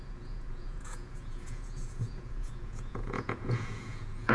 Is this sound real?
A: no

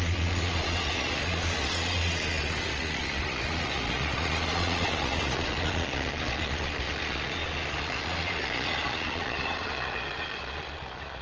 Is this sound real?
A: no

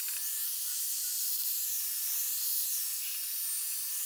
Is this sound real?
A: yes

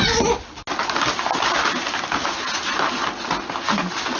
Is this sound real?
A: yes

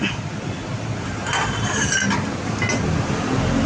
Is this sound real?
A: yes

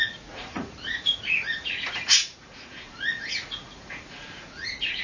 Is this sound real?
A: no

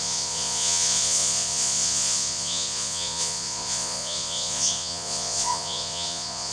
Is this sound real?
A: no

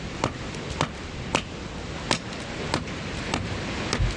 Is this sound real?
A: yes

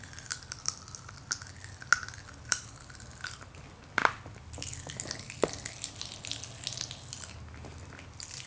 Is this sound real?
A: yes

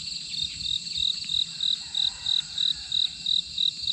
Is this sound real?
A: yes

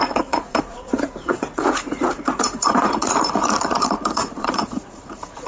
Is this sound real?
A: no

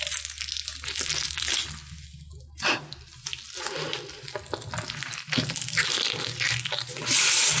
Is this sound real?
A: yes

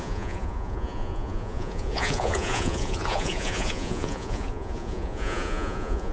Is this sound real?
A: no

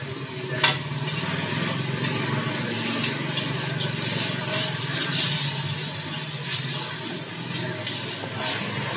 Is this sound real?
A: yes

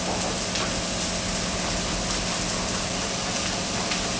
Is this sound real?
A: yes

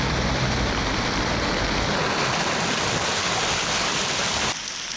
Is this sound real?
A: yes